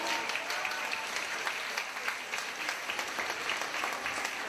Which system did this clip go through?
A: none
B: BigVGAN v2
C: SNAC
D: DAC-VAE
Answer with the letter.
A